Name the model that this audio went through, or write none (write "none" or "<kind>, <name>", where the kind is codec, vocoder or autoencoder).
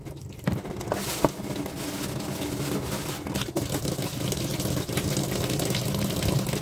none